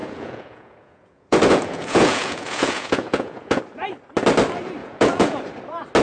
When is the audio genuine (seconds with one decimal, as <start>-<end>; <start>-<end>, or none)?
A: 3.6-4.8; 5.4-6.0

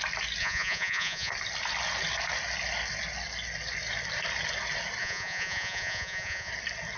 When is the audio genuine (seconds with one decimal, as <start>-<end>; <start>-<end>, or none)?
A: 0.0-0.4; 1.3-5.0; 6.5-7.0

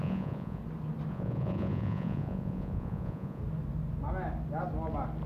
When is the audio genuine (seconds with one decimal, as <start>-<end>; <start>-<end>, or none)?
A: 0.6-1.1; 3.4-5.3

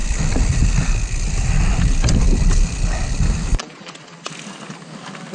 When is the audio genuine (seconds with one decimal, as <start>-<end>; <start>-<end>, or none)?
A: 0.0-3.5; 4.3-5.3